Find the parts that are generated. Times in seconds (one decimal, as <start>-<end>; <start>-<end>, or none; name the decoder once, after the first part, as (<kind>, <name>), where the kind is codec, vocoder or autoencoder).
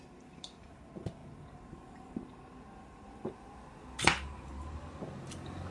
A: none